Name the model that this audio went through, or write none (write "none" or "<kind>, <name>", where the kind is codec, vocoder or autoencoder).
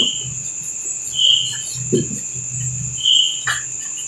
none